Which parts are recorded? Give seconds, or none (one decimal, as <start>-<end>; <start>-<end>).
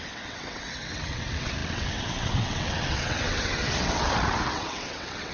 none